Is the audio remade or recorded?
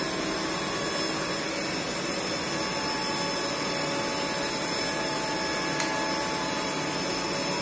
recorded